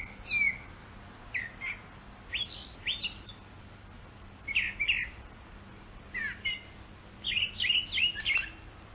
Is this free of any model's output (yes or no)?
yes